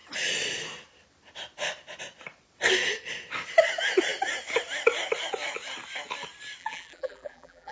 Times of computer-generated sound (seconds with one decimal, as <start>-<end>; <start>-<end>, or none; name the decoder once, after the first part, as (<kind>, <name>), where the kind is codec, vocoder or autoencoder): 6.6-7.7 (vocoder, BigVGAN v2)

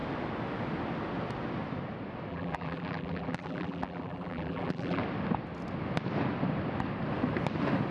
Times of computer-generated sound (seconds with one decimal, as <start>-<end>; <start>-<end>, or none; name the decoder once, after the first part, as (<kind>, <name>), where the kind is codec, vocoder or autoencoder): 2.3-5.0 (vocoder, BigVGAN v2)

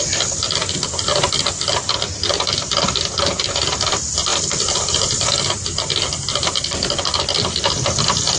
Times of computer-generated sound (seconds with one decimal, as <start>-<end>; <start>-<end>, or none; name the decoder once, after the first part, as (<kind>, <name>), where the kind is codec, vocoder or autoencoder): 4.3-4.9 (vocoder, BigVGAN v2)

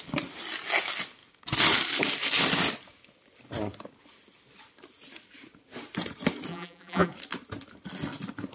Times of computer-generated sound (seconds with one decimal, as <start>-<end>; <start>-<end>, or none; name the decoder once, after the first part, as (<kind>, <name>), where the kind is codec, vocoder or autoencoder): 6.5-7.1 (vocoder, BigVGAN v2)

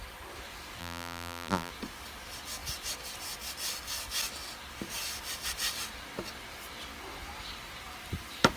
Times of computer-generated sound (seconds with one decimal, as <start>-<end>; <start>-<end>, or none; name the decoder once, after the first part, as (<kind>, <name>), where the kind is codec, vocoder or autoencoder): 0.8-1.7 (vocoder, BigVGAN v2)

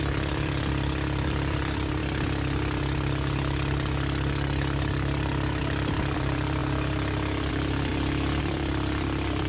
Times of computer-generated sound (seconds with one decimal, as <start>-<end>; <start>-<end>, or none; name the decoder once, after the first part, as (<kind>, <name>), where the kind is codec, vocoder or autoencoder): 0.0-2.0 (vocoder, BigVGAN v2); 5.6-6.6; 7.5-7.9; 8.4-9.5